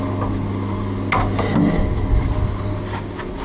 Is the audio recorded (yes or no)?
yes